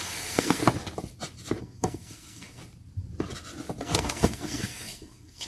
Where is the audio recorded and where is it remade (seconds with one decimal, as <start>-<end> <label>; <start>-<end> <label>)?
0.0-0.6 remade; 0.6-1.6 recorded; 1.6-2.6 remade; 2.6-3.8 recorded; 3.8-5.5 remade